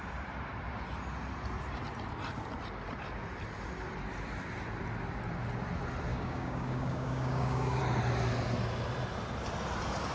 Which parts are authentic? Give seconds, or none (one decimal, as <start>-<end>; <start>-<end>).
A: 0.0-6.1; 7.8-10.1